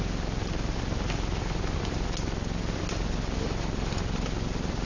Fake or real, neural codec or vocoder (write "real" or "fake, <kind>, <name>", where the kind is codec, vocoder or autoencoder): real